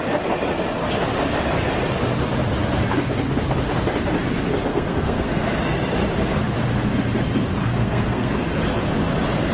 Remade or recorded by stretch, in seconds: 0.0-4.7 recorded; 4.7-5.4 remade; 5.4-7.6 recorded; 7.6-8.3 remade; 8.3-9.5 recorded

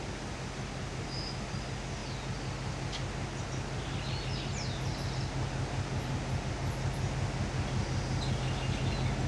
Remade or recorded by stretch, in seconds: 0.0-9.3 recorded

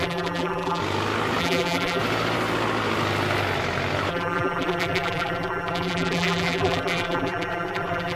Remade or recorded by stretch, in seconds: 0.0-0.8 remade; 0.8-1.4 recorded; 1.4-2.0 remade; 2.0-4.1 recorded; 4.1-8.2 remade

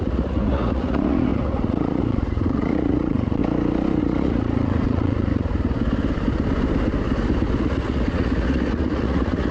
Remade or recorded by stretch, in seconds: 0.0-3.4 remade; 3.4-4.0 recorded; 4.0-5.5 remade; 5.5-7.6 recorded; 7.6-9.5 remade